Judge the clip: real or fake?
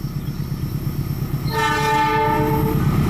real